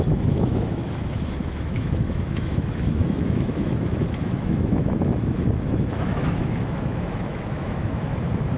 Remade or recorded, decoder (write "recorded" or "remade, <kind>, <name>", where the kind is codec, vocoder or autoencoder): remade, autoencoder, DAC-VAE